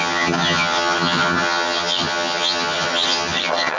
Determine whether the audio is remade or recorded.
remade